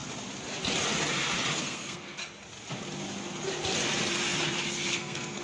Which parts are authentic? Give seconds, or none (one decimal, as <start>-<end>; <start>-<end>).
0.0-1.6; 2.2-4.9